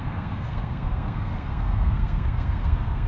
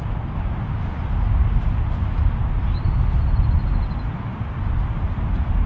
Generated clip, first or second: first